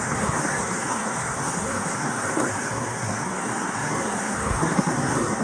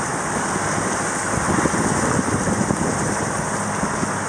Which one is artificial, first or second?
first